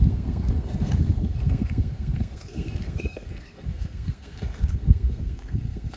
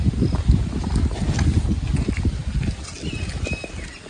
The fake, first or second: first